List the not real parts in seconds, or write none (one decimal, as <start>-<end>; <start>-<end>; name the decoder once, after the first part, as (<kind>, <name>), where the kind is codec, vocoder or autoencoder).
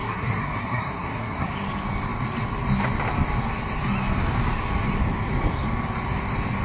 0.0-1.5 (codec, SNAC)